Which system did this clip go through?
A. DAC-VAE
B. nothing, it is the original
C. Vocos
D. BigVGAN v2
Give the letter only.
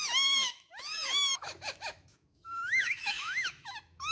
A